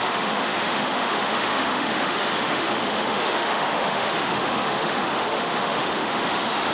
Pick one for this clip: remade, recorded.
remade